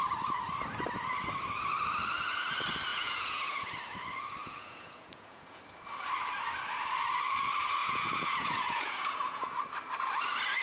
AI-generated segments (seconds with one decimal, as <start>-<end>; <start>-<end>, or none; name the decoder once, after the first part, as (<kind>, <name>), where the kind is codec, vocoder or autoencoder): 2.9-3.7 (vocoder, Vocos); 4.4-5.6; 7.8-9.6